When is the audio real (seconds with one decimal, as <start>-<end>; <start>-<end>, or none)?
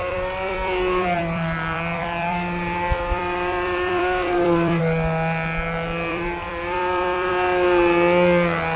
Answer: 4.8-6.1; 7.3-8.8